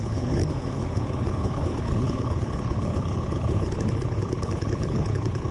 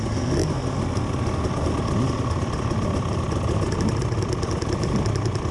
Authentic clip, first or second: second